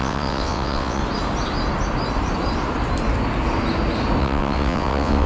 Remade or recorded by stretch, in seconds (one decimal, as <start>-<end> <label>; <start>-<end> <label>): 0.0-1.0 remade; 1.0-4.2 recorded; 4.2-5.3 remade